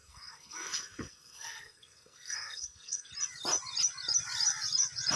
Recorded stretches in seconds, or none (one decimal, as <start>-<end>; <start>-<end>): 3.1-5.2